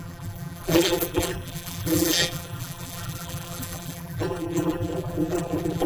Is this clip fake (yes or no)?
yes